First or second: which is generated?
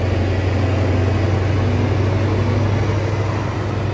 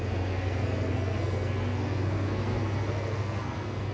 second